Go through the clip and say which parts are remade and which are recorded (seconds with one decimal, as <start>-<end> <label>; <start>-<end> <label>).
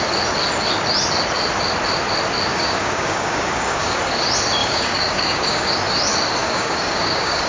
0.0-2.5 recorded; 2.5-4.0 remade; 4.0-4.6 recorded; 4.6-5.7 remade; 5.7-6.4 recorded; 6.4-7.5 remade